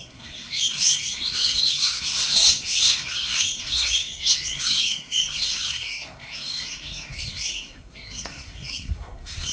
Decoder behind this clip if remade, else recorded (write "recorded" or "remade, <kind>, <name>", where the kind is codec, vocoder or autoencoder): remade, codec, SNAC